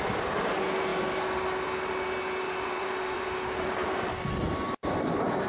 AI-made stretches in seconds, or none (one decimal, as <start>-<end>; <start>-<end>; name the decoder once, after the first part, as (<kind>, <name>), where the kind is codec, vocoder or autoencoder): 0.0-0.9 (vocoder, BigVGAN v2); 2.4-3.8; 4.5-5.5